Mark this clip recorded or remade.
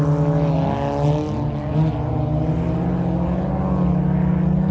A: recorded